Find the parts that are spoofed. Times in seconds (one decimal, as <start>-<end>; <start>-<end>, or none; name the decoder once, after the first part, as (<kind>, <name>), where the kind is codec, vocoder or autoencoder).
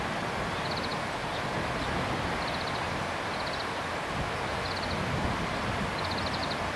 none